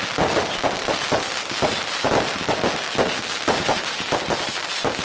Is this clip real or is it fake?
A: real